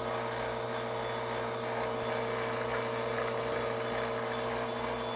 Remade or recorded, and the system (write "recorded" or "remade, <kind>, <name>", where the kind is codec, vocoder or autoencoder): recorded